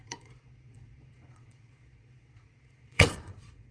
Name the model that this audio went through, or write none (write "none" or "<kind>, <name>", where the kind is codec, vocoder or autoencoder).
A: vocoder, Vocos